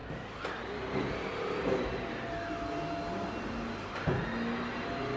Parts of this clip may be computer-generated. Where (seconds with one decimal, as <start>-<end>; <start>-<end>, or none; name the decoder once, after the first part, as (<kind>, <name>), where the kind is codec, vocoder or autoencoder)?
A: none